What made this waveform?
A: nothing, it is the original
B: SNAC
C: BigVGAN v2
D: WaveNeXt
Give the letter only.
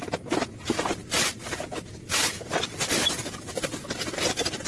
C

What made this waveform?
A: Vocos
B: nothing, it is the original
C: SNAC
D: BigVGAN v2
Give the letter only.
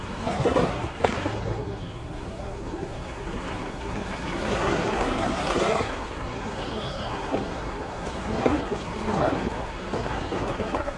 C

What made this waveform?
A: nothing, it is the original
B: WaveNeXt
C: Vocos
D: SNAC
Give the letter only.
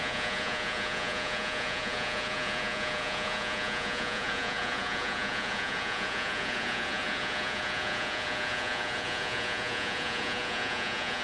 C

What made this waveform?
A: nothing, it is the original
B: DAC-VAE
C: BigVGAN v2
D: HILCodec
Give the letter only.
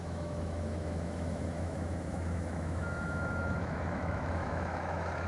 B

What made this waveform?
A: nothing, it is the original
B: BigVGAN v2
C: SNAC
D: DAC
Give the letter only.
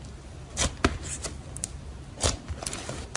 A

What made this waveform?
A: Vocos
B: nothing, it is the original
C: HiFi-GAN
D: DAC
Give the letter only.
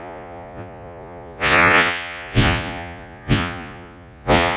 A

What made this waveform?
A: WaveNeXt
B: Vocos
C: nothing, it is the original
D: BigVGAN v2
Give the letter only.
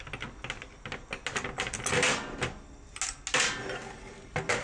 C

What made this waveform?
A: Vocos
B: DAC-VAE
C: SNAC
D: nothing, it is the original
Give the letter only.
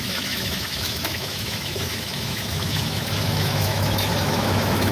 B